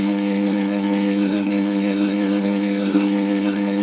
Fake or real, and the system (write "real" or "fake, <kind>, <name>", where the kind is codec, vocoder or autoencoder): fake, codec, SNAC